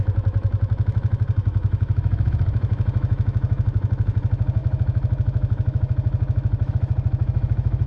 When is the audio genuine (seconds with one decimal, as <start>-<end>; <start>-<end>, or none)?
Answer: none